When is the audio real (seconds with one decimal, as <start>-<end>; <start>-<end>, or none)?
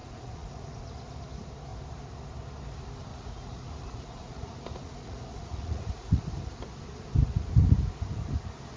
0.9-3.1; 6.2-8.8